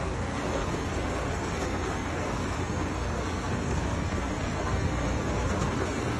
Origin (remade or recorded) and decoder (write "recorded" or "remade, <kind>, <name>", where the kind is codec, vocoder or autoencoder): remade, codec, SNAC